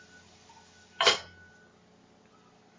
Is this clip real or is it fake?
real